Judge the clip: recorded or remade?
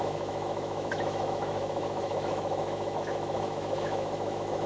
remade